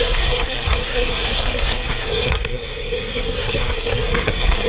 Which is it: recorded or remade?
remade